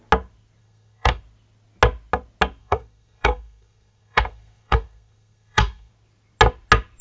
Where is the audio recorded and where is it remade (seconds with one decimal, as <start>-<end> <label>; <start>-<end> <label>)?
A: 0.0-0.6 recorded; 0.6-1.2 remade; 1.2-2.6 recorded; 2.6-5.9 remade; 5.9-7.0 recorded